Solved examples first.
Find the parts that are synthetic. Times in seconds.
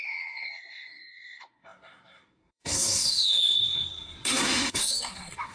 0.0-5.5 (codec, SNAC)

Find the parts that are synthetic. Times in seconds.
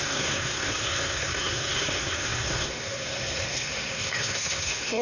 0.0-5.0 (codec, SNAC)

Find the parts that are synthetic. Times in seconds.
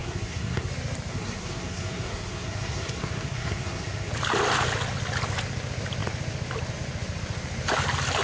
0.0-0.7 (codec, SNAC); 1.1-4.1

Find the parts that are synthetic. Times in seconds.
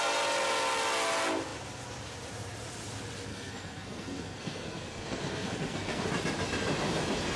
3.3-6.0 (codec, SNAC)